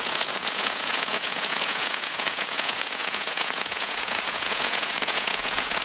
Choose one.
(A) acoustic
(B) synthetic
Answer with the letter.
B